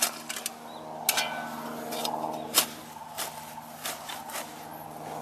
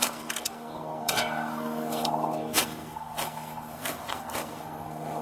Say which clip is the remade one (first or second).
second